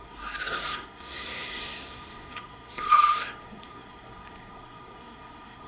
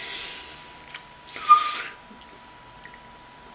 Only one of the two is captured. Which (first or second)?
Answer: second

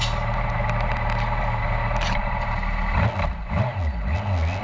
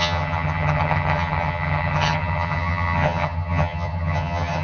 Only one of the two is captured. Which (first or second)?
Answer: first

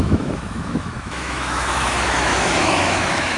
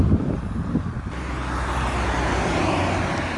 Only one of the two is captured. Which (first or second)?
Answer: second